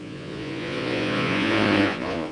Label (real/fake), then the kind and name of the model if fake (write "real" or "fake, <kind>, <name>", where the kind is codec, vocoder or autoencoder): fake, vocoder, Vocos